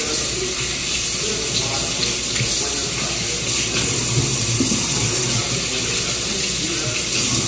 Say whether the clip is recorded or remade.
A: recorded